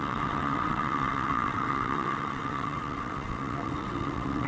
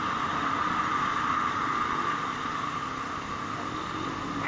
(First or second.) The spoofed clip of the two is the first